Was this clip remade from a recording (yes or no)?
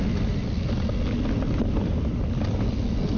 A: no